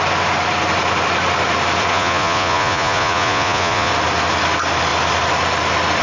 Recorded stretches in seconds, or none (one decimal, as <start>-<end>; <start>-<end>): 0.0-1.9; 3.9-6.0